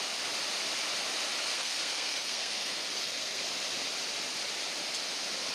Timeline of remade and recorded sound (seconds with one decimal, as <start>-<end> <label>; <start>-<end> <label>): 0.0-1.5 recorded; 1.5-3.4 remade; 3.4-5.5 recorded